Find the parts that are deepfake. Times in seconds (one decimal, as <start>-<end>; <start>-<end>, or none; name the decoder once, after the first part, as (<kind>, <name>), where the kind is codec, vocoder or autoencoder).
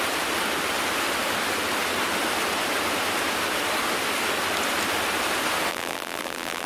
5.7-6.7 (vocoder, BigVGAN v2)